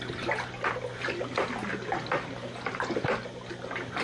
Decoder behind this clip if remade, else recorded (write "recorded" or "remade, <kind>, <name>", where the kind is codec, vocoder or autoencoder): recorded